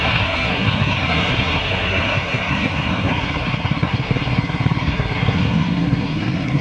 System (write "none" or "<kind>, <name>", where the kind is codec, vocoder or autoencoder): codec, SNAC